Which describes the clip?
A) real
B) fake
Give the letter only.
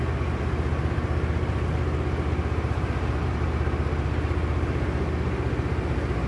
A